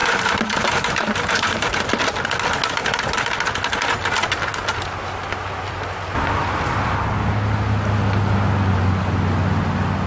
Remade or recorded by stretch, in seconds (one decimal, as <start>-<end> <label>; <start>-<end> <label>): 0.0-1.7 remade; 1.7-10.1 recorded